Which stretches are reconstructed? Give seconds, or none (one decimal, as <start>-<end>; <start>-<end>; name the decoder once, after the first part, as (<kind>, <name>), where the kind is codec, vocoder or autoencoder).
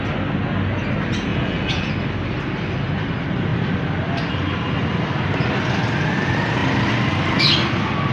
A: 1.3-1.9 (vocoder, Vocos)